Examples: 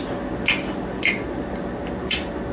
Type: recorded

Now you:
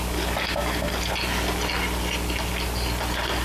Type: recorded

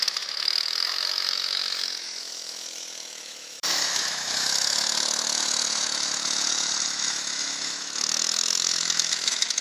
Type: remade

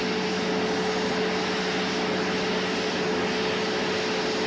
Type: recorded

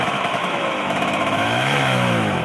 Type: remade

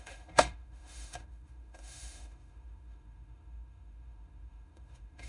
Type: remade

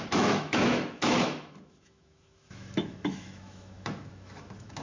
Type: remade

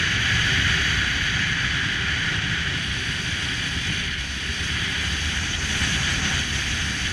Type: recorded